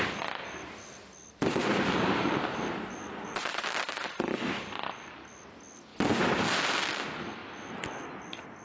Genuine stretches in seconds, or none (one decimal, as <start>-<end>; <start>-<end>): 0.0-1.6; 4.0-8.6